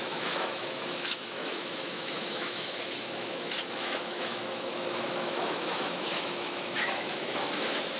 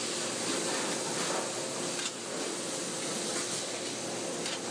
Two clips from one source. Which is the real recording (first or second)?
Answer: second